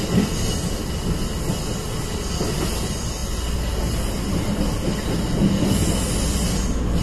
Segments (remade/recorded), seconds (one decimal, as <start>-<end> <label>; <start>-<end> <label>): 0.0-7.0 recorded